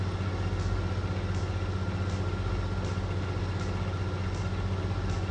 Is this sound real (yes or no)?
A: yes